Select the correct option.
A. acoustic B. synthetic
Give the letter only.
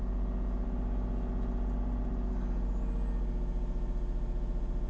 A